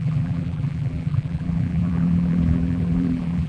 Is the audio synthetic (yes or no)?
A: yes